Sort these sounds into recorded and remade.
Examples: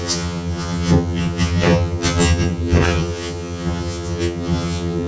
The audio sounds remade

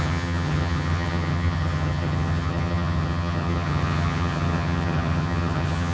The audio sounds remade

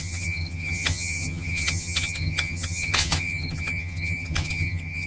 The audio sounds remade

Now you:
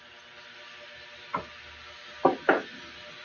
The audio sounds recorded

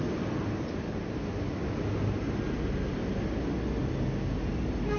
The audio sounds recorded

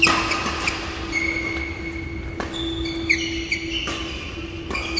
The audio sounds recorded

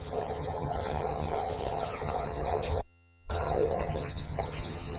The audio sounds remade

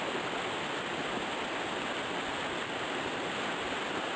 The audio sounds recorded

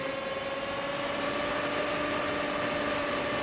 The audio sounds recorded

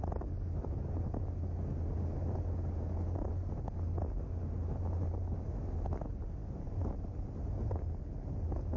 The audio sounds recorded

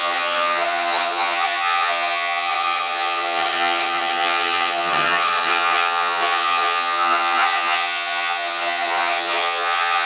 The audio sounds remade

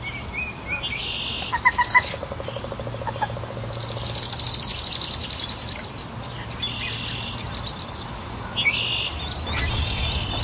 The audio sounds recorded